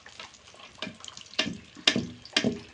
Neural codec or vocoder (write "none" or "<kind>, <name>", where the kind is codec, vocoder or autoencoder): none